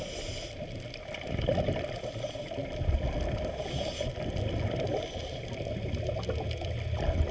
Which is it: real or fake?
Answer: real